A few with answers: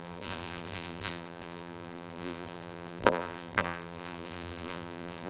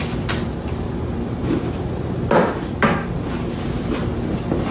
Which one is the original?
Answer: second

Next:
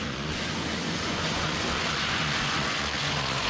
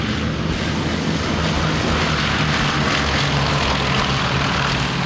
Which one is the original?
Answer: second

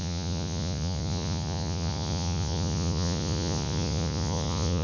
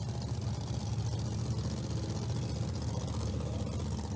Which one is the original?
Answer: second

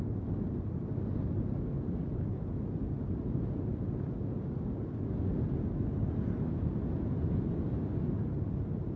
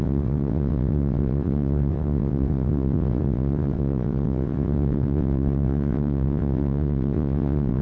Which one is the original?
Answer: first